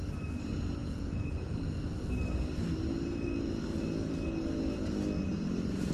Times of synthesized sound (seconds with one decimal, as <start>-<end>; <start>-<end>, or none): 0.8-1.5